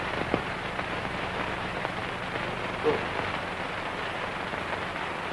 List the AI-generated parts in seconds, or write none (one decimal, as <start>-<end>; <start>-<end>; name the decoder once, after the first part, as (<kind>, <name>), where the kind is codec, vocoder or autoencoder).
0.0-2.0 (vocoder, BigVGAN v2)